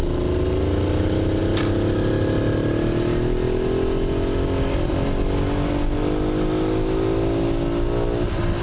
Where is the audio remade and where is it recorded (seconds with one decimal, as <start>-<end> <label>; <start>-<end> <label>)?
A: 0.0-8.6 recorded

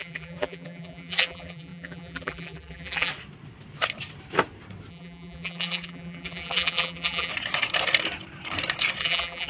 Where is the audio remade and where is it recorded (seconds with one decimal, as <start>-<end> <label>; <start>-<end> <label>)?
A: 0.0-3.1 remade; 3.1-4.9 recorded; 4.9-7.3 remade; 7.3-9.0 recorded; 9.0-9.5 remade

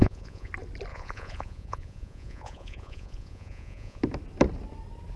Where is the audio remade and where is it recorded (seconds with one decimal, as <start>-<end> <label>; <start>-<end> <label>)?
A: 0.0-0.5 remade; 0.5-0.9 recorded; 0.9-4.0 remade; 4.0-5.2 recorded

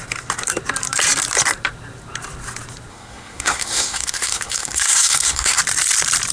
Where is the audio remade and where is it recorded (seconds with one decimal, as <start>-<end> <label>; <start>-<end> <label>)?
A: 0.0-2.9 recorded; 2.9-5.6 remade; 5.6-6.3 recorded

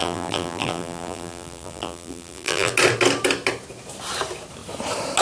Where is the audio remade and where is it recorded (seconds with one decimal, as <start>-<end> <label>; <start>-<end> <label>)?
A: 0.0-2.7 remade; 2.7-5.2 recorded